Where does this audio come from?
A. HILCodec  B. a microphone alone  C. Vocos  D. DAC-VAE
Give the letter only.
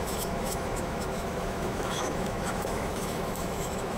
D